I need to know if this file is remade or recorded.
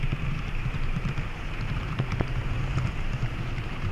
remade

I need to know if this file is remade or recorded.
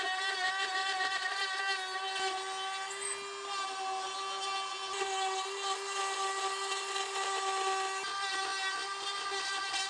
recorded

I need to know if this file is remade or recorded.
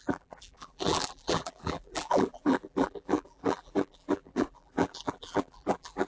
remade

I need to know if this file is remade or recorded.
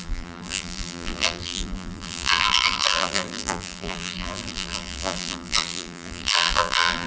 remade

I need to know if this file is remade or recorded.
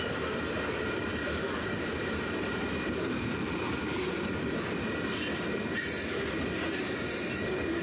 remade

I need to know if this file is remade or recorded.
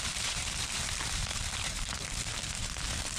recorded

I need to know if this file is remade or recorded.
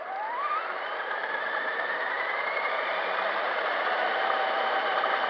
remade